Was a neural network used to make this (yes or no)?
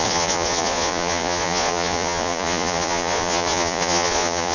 yes